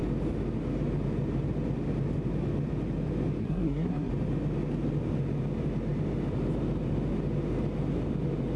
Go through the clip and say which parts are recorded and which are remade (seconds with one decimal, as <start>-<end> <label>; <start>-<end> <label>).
0.0-3.4 recorded; 3.4-4.1 remade; 4.1-8.6 recorded